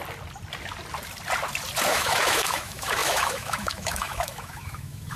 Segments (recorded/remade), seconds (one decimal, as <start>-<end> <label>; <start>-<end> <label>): 0.0-1.9 recorded; 1.9-5.2 remade